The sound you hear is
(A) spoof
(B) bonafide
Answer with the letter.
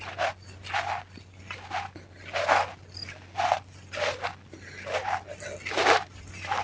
B